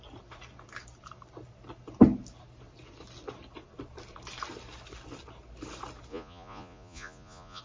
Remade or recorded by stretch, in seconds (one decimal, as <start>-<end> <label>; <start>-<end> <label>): 0.0-6.1 recorded; 6.1-7.6 remade